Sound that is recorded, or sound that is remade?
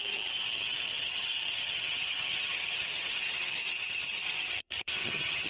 remade